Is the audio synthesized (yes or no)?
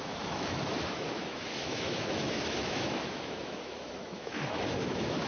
yes